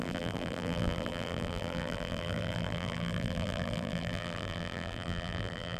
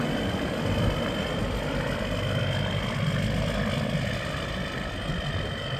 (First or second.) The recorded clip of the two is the second